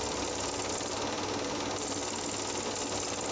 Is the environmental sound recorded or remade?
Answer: recorded